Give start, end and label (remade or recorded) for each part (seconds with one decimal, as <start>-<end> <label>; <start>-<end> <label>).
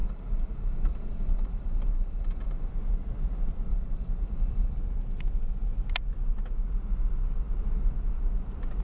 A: 0.0-2.7 remade; 2.7-3.7 recorded; 3.7-4.8 remade; 4.8-8.8 recorded